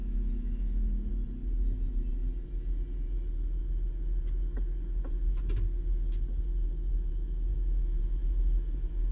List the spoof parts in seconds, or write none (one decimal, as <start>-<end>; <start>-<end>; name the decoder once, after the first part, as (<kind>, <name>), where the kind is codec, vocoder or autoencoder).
0.0-1.1 (autoencoder, DAC-VAE); 7.5-8.0